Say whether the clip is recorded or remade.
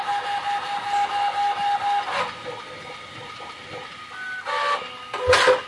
recorded